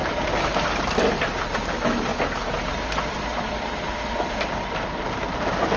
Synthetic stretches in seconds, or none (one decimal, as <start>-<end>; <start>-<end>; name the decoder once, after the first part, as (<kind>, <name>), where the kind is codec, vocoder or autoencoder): 0.0-2.1 (vocoder, BigVGAN v2); 4.1-5.8